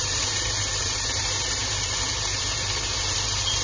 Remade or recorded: remade